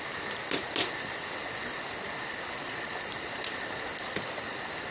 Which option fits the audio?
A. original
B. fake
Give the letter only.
A